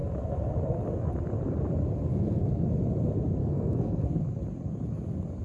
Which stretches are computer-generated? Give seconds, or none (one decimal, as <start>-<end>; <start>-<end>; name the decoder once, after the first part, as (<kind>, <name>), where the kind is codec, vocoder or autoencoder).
2.0-2.7 (codec, SNAC); 3.4-4.2